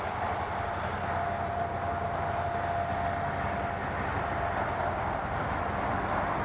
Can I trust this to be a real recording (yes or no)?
yes